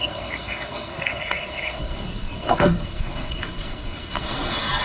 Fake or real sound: fake